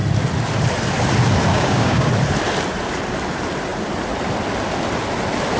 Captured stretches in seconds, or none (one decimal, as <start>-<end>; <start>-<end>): 0.0-1.5; 2.1-5.6